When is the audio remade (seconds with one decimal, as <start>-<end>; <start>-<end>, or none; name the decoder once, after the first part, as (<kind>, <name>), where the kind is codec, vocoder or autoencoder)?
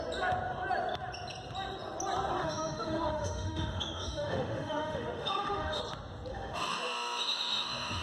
2.4-5.8 (autoencoder, DAC-VAE); 6.3-8.0